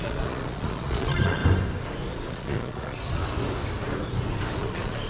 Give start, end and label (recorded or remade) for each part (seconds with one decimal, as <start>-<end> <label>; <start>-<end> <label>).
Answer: 0.0-1.4 remade; 1.4-2.3 recorded; 2.3-3.2 remade; 3.2-4.6 recorded; 4.6-5.1 remade